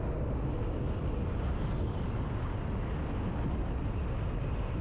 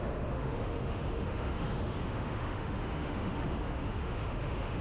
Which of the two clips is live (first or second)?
first